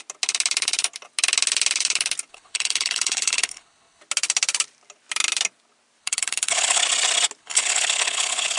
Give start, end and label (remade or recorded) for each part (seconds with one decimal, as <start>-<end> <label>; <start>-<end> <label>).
0.0-2.3 recorded; 2.3-4.0 remade; 4.0-6.0 recorded; 6.0-6.8 remade; 6.8-7.4 recorded; 7.4-8.6 remade